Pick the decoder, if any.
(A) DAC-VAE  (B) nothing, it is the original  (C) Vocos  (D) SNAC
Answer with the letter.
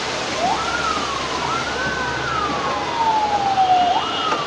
B